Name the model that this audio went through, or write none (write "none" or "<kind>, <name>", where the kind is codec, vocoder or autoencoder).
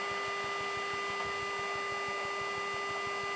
none